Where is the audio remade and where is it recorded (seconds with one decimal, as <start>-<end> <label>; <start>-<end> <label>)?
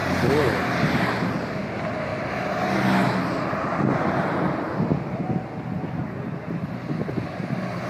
0.0-7.9 recorded